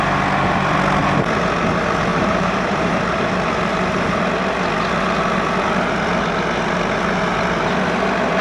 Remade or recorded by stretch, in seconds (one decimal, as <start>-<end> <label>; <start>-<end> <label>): 0.0-2.1 recorded; 2.1-3.2 remade; 3.2-3.7 recorded; 3.7-4.2 remade; 4.2-8.4 recorded